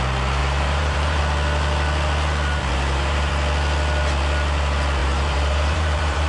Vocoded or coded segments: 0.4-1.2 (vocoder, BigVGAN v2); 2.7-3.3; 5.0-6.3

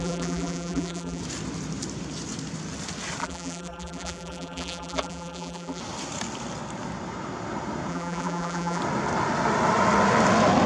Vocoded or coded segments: 0.0-1.2 (vocoder, BigVGAN v2); 3.2-5.8; 7.9-8.8

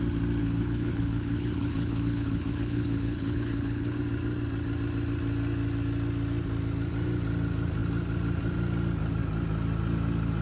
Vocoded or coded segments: 0.4-4.0 (codec, HILCodec)

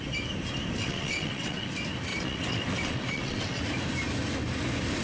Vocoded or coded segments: 0.8-1.7 (vocoder, WaveNeXt); 2.1-3.6

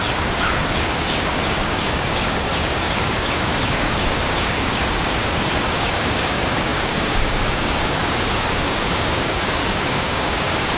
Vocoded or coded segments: 0.0-10.8 (codec, DAC)